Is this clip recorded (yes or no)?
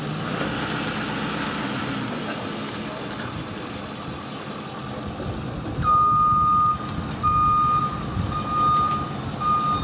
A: yes